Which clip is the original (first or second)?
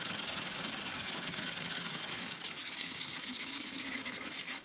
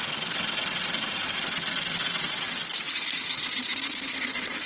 second